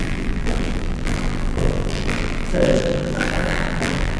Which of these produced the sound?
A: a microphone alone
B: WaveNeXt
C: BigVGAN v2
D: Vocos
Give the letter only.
C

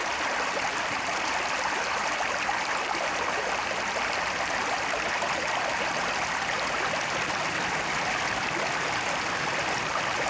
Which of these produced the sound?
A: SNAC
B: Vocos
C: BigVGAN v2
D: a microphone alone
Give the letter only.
C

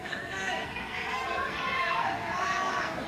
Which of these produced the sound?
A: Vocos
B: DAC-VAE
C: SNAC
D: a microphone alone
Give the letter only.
C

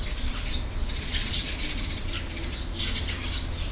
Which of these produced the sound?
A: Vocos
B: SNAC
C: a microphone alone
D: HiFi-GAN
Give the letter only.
C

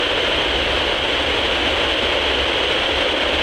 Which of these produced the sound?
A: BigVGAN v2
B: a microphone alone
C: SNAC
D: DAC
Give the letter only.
B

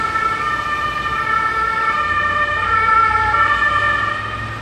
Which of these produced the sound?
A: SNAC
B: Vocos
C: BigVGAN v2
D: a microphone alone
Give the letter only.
D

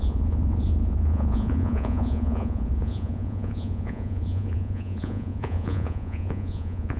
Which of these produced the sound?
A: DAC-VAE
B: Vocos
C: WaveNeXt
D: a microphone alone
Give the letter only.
B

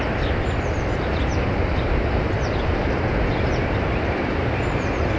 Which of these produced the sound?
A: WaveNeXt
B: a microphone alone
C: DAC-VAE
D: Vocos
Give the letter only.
B